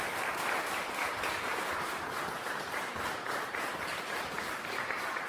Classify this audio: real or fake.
fake